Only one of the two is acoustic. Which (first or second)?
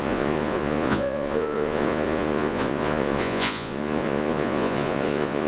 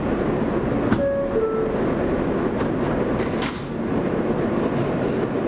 second